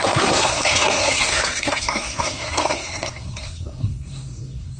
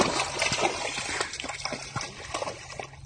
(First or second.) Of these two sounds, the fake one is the first